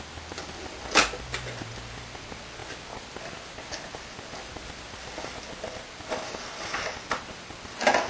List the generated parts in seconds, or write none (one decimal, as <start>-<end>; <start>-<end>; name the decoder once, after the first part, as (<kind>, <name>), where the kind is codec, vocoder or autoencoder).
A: none